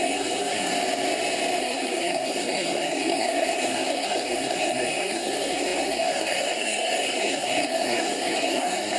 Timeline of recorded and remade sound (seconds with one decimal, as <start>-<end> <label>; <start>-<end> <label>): 0.0-0.7 remade; 0.7-1.6 recorded; 1.6-9.0 remade